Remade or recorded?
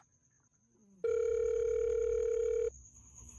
recorded